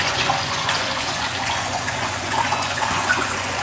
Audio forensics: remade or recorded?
remade